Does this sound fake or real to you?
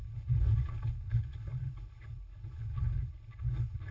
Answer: fake